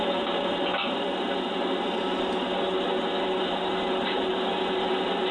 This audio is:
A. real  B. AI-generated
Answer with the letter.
A